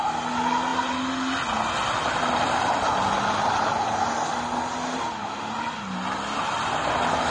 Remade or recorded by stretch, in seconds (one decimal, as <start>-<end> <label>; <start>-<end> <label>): 0.0-7.3 recorded